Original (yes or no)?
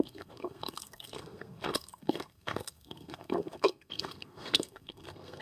no